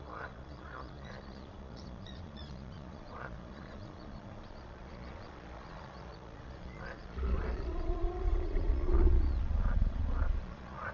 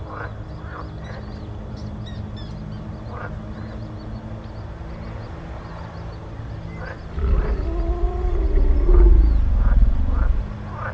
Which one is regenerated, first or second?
first